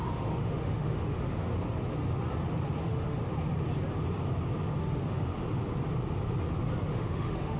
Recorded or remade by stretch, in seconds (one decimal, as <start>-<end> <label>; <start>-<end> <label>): 0.0-1.5 remade; 1.5-2.8 recorded; 2.8-3.2 remade; 3.2-4.8 recorded; 4.8-5.3 remade; 5.3-6.9 recorded; 6.9-7.6 remade